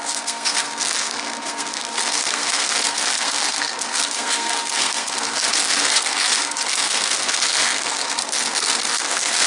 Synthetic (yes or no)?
yes